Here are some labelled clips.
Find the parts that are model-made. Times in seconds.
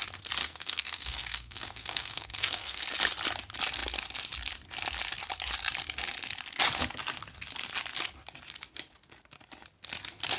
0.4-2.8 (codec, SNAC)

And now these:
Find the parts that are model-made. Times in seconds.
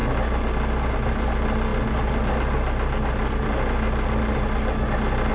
none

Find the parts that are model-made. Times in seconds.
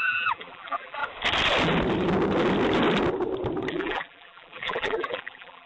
0.0-1.0 (vocoder, BigVGAN v2); 3.7-5.7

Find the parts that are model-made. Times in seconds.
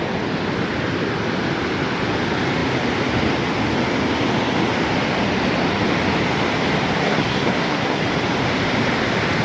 7.0-8.0 (codec, SNAC)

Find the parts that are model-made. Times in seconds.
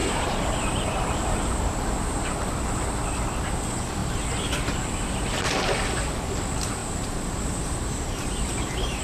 0.0-1.0 (vocoder, BigVGAN v2); 6.8-9.0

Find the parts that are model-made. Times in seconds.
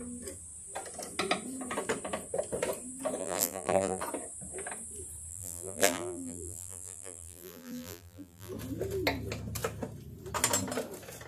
3.2-4.0 (vocoder, BigVGAN v2); 5.3-8.5